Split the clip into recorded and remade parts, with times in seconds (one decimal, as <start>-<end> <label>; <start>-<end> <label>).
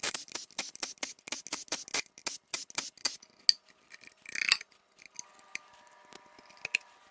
0.0-7.1 recorded